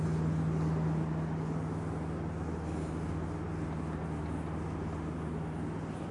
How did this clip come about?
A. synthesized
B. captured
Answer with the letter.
B